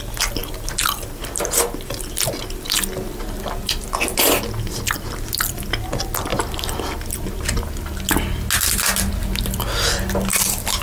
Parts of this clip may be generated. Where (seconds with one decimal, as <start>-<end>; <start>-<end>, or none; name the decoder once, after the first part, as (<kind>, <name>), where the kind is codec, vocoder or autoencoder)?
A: 0.0-6.3 (vocoder, BigVGAN v2); 9.1-10.8